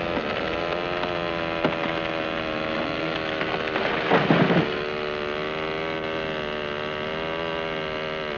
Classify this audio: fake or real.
real